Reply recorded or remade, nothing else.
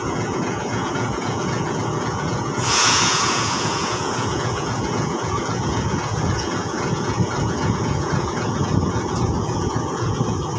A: remade